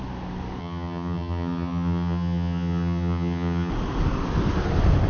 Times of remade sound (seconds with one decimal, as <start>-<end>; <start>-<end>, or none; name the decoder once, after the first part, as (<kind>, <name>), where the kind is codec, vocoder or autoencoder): 0.6-3.7 (vocoder, HiFi-GAN)

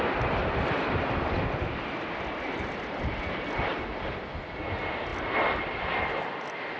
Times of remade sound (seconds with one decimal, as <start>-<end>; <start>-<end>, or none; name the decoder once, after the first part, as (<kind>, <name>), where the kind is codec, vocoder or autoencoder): none

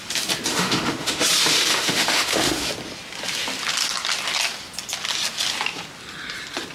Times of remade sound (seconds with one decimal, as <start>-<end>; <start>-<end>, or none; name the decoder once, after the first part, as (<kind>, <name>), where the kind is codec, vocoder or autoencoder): 0.5-1.2 (autoencoder, DAC-VAE); 1.7-2.7

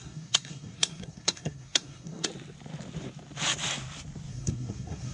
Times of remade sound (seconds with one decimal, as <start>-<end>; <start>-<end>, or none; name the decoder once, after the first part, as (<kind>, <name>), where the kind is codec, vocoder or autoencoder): 0.0-2.3 (codec, SNAC); 4.3-5.1

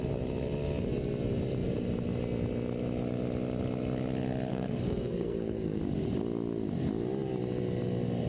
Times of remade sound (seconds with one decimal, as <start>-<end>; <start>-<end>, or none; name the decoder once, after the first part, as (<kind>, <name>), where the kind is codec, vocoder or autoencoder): 4.5-5.8 (codec, SNAC)

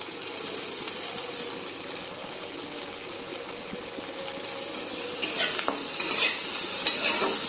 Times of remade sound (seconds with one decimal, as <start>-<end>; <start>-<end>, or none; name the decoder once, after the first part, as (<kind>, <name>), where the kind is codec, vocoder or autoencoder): none

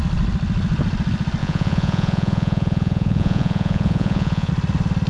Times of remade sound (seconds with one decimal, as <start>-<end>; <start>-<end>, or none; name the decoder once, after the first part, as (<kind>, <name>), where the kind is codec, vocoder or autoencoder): 1.4-4.5 (vocoder, Vocos)

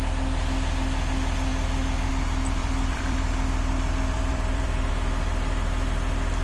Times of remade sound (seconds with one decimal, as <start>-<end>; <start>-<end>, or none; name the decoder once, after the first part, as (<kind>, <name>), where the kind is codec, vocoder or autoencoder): 2.6-4.9 (vocoder, BigVGAN v2)